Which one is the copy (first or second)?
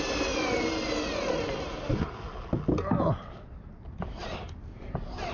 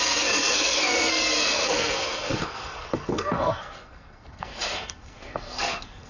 second